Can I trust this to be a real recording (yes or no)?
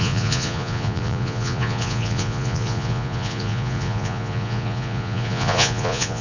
no